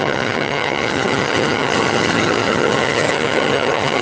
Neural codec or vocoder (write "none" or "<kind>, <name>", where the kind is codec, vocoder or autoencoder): vocoder, HiFi-GAN